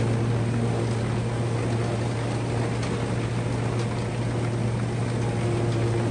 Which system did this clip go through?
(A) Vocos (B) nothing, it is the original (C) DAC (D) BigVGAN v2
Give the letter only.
B